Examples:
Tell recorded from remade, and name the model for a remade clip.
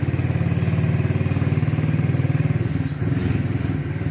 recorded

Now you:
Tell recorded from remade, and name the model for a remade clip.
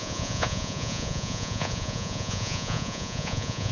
remade, vocoder, Vocos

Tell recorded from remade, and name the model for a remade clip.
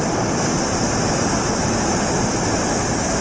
recorded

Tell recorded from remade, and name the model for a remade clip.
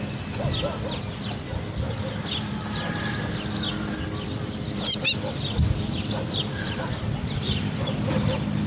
recorded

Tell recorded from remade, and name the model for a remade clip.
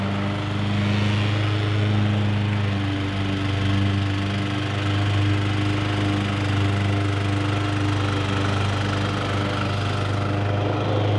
recorded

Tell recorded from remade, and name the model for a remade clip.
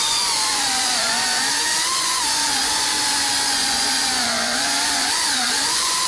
remade, vocoder, Vocos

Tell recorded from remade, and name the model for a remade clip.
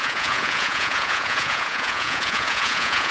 remade, vocoder, Vocos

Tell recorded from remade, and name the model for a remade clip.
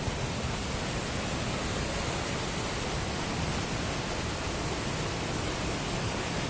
recorded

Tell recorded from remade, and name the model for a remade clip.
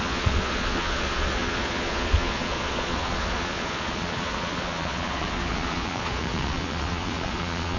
remade, vocoder, Vocos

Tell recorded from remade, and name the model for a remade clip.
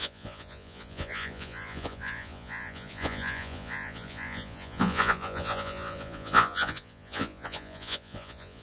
remade, vocoder, Vocos